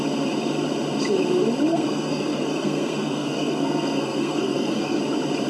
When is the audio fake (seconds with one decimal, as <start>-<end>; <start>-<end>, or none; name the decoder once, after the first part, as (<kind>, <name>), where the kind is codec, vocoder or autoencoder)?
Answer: 1.7-5.0 (codec, SNAC)